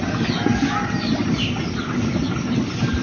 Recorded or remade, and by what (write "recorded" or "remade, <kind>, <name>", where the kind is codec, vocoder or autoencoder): recorded